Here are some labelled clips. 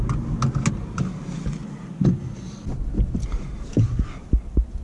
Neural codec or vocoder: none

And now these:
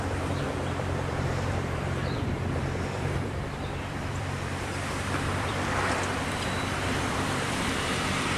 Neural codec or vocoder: vocoder, BigVGAN v2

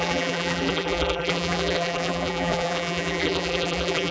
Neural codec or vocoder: vocoder, BigVGAN v2